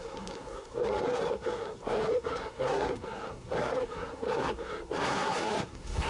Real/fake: fake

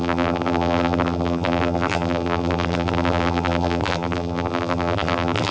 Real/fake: fake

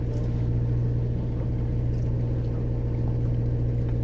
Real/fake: real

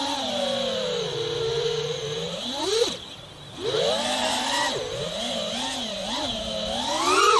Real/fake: real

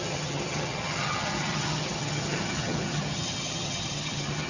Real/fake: fake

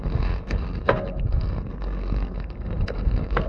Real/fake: fake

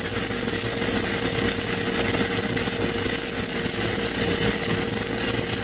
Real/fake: real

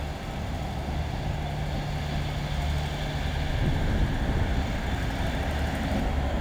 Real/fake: real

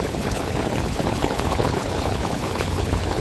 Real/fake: fake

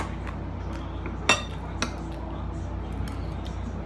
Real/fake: real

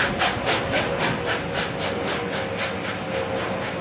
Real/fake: real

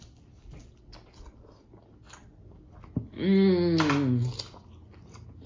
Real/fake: real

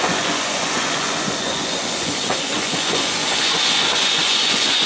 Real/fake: fake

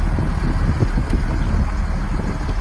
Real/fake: real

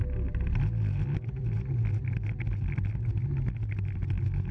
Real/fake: real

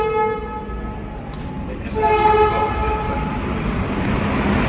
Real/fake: real